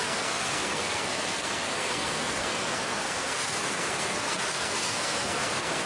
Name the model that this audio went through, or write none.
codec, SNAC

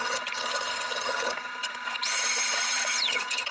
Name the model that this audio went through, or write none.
vocoder, HiFi-GAN